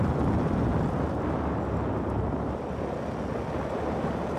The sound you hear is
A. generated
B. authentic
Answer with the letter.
B